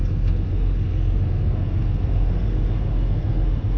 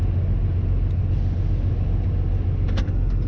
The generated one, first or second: first